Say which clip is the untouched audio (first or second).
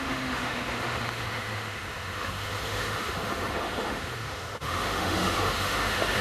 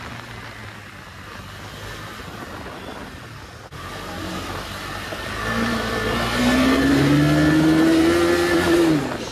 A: second